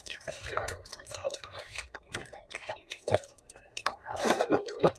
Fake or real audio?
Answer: fake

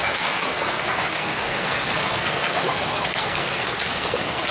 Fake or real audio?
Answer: fake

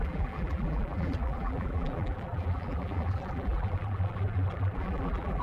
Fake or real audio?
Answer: fake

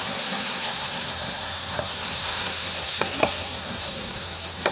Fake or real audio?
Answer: fake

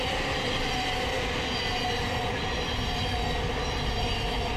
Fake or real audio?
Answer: real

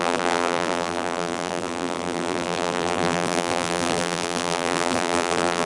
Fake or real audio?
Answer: fake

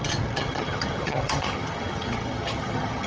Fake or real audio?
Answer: fake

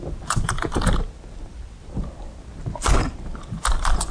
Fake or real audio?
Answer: real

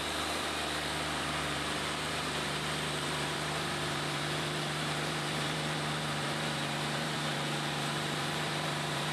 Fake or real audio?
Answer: fake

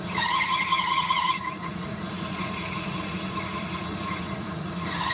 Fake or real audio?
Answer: fake